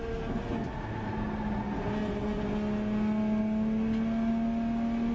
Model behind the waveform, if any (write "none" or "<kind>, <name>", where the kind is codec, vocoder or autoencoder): none